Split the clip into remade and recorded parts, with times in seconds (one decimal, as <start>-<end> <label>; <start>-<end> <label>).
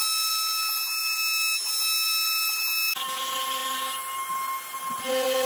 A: 0.0-5.5 recorded